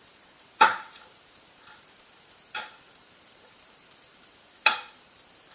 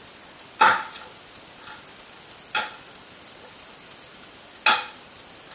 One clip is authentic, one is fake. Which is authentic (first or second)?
second